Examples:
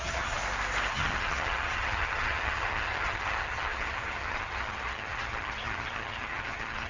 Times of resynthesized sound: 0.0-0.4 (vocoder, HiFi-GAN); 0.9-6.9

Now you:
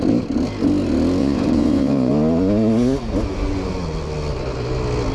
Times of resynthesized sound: 1.2-2.1 (vocoder, Vocos)